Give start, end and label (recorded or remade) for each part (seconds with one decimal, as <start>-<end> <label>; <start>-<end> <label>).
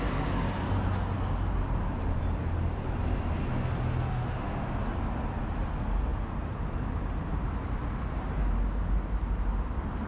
0.0-4.1 recorded; 4.1-4.7 remade; 4.7-10.1 recorded